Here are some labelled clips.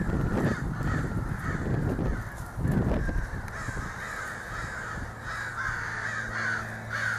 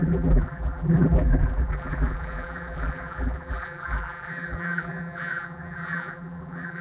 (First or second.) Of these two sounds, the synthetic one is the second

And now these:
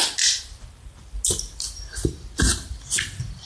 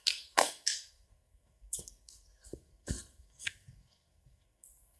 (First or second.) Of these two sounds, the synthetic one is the second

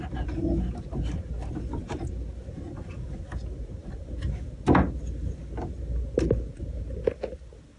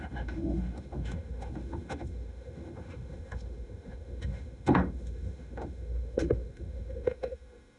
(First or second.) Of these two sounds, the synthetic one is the second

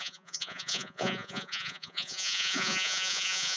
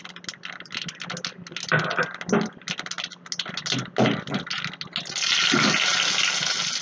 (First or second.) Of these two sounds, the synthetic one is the first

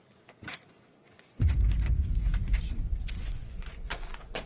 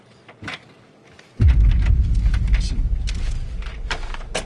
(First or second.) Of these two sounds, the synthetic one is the first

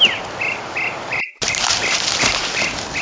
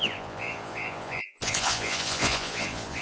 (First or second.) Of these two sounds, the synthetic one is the second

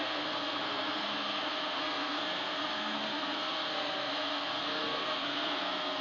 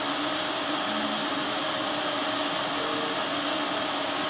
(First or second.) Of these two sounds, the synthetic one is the first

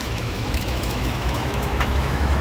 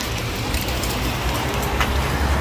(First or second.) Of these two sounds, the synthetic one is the first